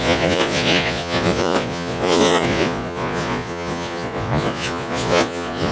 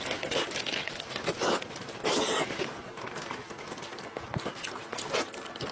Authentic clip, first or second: second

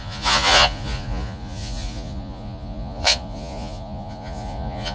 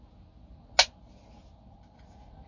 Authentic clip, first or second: second